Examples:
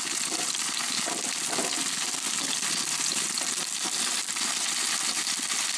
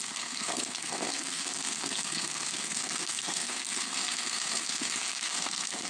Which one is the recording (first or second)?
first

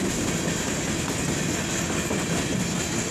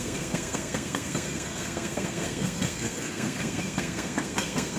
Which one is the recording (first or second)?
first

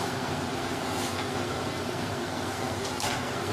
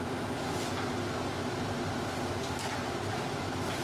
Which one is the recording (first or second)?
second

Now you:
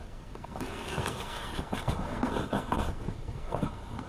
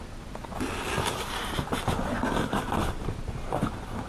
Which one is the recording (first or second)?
second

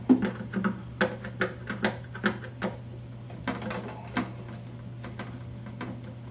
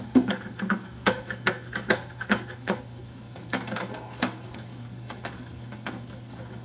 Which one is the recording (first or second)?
first